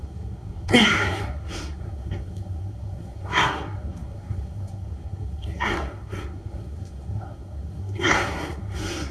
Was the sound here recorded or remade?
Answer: remade